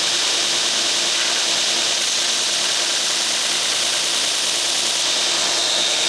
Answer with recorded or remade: recorded